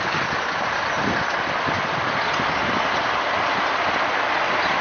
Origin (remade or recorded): recorded